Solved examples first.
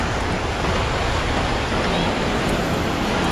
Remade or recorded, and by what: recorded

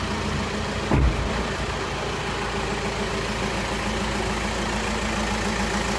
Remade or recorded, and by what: recorded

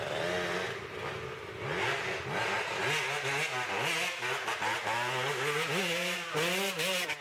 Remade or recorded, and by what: recorded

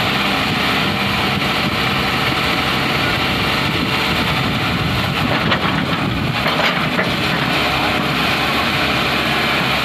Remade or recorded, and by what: recorded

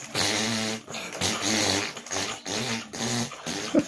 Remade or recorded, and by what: recorded